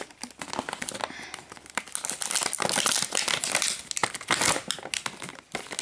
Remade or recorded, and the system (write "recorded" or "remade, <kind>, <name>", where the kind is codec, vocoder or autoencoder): recorded